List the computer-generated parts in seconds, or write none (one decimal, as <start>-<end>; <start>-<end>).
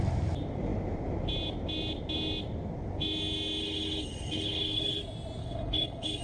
3.6-5.0; 5.4-6.2